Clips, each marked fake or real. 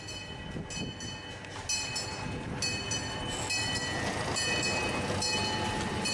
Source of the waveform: real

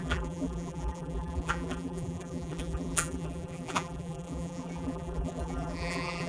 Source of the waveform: fake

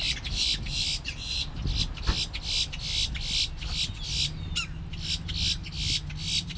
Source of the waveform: real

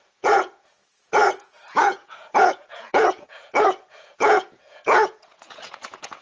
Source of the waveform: fake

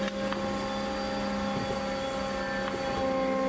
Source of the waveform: real